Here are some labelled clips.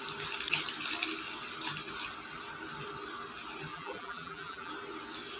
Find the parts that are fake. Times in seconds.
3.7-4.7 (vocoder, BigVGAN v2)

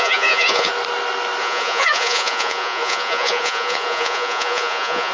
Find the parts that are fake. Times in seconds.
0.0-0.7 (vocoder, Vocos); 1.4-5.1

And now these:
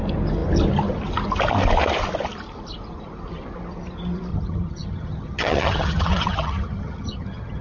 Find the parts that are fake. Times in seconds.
4.3-7.6 (vocoder, HiFi-GAN)

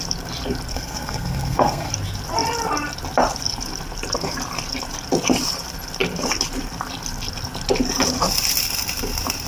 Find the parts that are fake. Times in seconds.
0.7-1.9 (codec, SNAC)

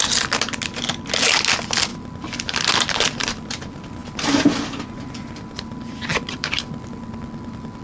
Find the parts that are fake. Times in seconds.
1.9-3.5 (vocoder, BigVGAN v2); 4.0-6.9

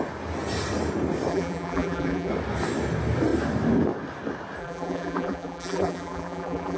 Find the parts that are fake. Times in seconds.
1.3-2.3 (vocoder, BigVGAN v2); 4.6-6.8

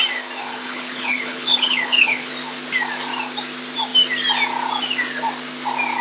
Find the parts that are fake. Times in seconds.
0.5-2.3 (codec, HILCodec)